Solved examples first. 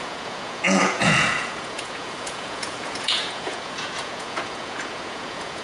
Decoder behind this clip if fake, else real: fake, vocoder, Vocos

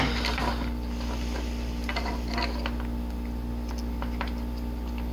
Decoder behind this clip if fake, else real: real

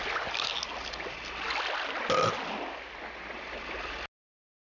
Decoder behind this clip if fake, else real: real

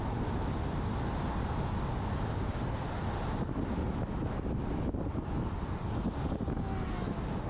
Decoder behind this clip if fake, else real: real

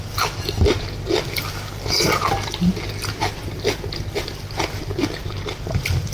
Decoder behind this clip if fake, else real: real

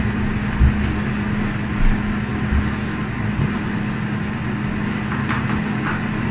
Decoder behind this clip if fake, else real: real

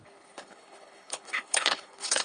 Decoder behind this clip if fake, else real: fake, codec, HILCodec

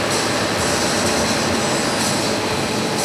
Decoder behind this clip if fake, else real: real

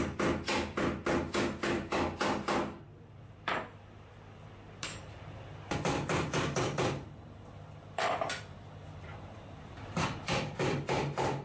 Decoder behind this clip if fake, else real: fake, vocoder, BigVGAN v2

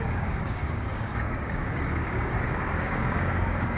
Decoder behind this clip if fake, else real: fake, codec, DAC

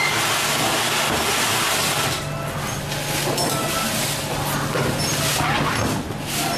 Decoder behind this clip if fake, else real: real